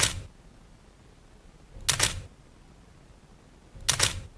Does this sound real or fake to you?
real